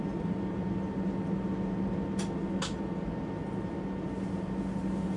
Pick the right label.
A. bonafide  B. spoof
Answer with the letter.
A